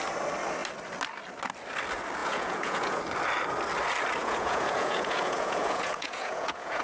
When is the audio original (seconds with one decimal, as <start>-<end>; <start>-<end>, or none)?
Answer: 0.0-2.2; 3.0-4.2